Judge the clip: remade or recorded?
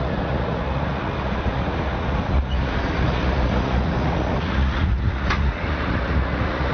remade